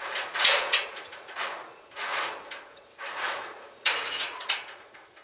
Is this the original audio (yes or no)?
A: no